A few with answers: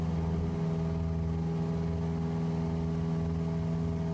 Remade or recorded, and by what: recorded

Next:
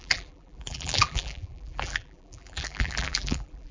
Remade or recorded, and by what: remade, vocoder, BigVGAN v2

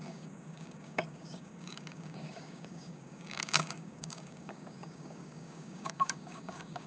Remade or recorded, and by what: remade, codec, DAC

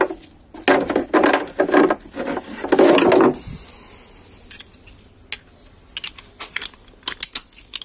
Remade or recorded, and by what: recorded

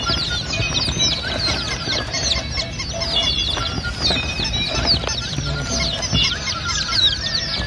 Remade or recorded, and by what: recorded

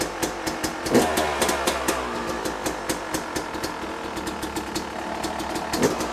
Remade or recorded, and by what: recorded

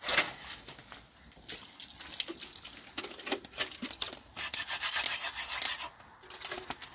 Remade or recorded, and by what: recorded